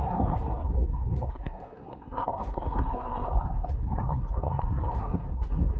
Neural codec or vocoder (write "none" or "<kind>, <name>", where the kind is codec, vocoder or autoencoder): codec, SNAC